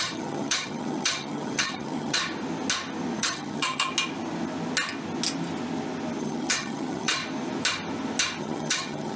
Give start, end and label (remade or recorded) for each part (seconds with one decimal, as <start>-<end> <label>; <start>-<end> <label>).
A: 0.0-2.2 remade; 2.2-3.2 recorded; 3.2-3.9 remade; 3.9-6.2 recorded; 6.2-7.2 remade; 7.2-8.4 recorded; 8.4-9.2 remade